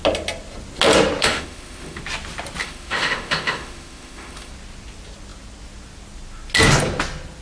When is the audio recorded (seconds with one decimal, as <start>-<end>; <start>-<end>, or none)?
0.0-1.2; 2.0-2.6; 4.5-7.4